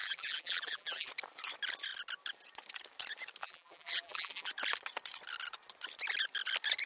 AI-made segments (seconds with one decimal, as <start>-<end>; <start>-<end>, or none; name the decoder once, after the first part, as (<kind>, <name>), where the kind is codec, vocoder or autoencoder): 0.0-1.1 (vocoder, BigVGAN v2); 3.4-4.5